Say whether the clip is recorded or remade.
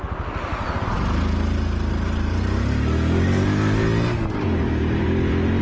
recorded